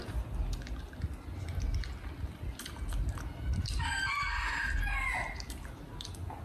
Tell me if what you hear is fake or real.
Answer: real